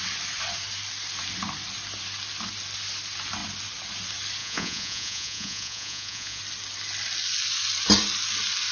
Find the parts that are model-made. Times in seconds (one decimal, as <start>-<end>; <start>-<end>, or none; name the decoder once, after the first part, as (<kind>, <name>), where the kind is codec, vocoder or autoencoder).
4.4-6.4 (vocoder, Vocos)